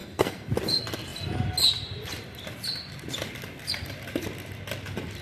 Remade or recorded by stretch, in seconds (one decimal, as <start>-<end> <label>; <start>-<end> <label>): 0.0-0.5 remade; 0.5-5.2 recorded

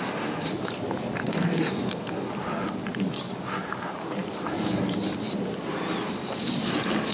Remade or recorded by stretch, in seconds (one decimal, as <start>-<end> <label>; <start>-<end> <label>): 0.0-1.2 recorded; 1.2-2.3 remade; 2.3-7.1 recorded

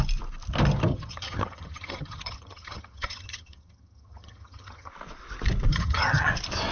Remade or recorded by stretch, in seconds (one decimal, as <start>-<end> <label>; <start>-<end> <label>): 0.0-0.9 recorded; 0.9-4.9 remade; 4.9-5.7 recorded; 5.7-6.3 remade; 6.3-6.7 recorded

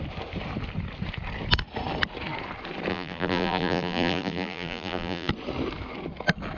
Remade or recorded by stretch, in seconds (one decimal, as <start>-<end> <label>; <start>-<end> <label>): 0.0-2.9 recorded; 2.9-5.3 remade; 5.3-6.6 recorded